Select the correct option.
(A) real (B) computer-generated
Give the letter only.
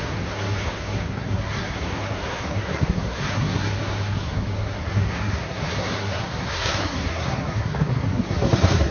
B